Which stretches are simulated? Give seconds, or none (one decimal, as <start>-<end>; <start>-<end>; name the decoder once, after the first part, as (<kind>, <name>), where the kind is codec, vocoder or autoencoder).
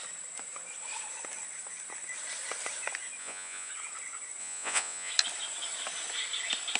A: 3.2-3.7 (vocoder, Vocos); 4.4-5.1